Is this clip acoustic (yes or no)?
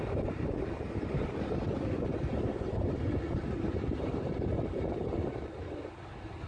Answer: no